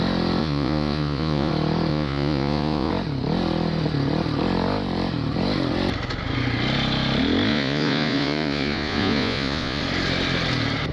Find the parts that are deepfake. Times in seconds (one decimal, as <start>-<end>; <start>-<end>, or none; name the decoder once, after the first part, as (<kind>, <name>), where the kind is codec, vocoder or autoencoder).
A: 0.4-1.5 (vocoder, Vocos); 1.9-2.9; 7.5-9.8